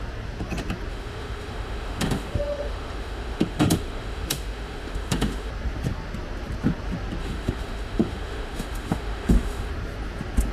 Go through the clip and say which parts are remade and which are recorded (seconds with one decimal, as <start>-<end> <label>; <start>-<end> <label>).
0.0-0.9 recorded; 0.9-5.5 remade; 5.5-7.2 recorded; 7.2-9.7 remade; 9.7-10.5 recorded